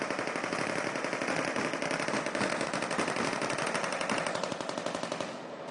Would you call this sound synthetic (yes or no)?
no